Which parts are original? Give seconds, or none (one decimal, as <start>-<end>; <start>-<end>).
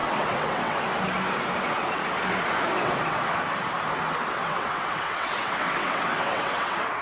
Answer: 0.8-2.7; 3.2-4.4